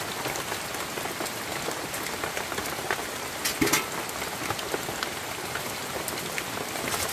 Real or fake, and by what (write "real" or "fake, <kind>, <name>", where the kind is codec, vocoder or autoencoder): real